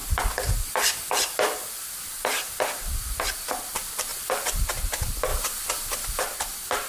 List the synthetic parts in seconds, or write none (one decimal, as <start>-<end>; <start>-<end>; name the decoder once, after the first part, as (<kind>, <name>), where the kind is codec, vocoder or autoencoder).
0.0-3.3 (vocoder, BigVGAN v2); 4.1-4.6

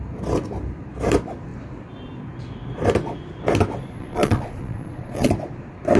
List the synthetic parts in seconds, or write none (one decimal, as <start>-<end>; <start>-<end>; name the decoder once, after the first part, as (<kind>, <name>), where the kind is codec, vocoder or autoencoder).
3.8-5.3 (vocoder, Vocos)